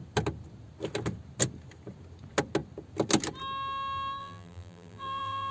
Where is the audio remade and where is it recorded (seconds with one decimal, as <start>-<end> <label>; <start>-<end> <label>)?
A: 0.0-4.2 recorded; 4.2-5.5 remade